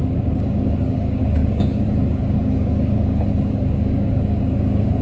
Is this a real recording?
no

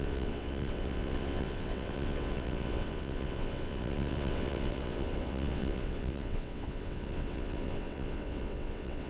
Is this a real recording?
no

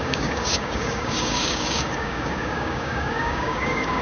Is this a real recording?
no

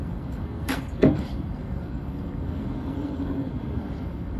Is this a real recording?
no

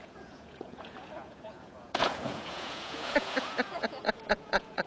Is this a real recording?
no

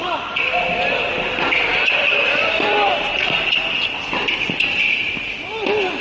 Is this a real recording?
yes